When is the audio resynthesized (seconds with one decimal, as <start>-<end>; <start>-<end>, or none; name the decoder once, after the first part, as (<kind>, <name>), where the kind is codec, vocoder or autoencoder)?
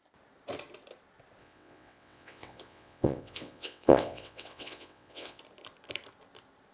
1.4-5.4 (vocoder, WaveNeXt)